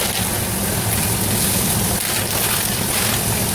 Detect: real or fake real